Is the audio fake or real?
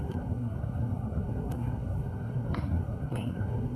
fake